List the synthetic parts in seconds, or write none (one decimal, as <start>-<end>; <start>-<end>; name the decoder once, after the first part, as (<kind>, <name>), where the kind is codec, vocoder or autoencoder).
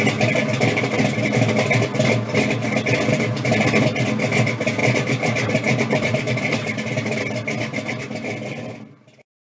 4.8-7.2 (vocoder, BigVGAN v2)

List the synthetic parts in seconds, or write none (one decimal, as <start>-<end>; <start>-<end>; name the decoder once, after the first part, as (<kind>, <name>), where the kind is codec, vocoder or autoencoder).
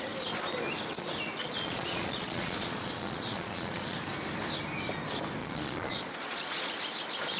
1.4-4.0 (vocoder, Vocos); 5.4-6.7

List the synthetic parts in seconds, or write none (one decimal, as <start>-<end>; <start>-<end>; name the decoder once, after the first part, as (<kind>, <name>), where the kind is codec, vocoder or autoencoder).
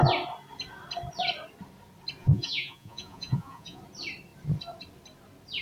2.2-3.8 (vocoder, Vocos)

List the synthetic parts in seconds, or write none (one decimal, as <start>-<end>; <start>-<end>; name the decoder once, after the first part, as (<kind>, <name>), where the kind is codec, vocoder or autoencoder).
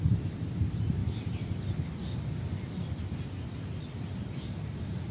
none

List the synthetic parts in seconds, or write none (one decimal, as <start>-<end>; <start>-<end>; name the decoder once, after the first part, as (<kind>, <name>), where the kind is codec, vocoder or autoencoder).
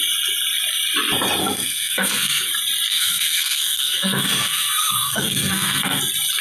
1.4-2.5 (codec, SNAC); 2.9-6.0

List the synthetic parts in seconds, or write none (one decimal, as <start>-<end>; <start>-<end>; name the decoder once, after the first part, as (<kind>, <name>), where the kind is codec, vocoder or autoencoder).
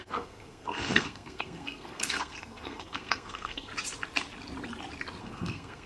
0.0-3.7 (codec, SNAC); 5.2-5.9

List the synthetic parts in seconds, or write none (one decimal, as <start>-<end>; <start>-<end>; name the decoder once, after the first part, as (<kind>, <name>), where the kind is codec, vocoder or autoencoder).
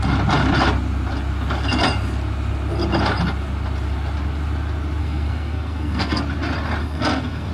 5.0-6.2 (codec, SNAC); 6.8-7.5